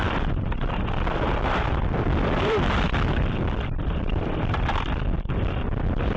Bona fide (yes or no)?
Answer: no